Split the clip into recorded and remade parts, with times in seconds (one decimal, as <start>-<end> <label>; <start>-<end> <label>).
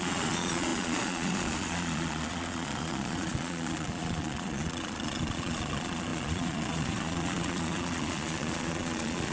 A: 0.0-9.3 remade